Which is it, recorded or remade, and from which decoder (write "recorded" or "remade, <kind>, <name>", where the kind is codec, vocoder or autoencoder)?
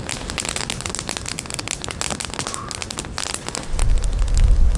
recorded